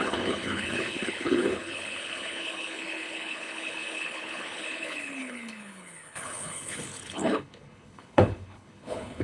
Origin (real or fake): fake